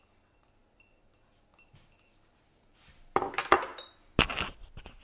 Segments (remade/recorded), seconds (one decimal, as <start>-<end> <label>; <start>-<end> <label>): 0.0-5.0 recorded